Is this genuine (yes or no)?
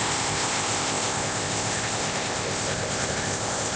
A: no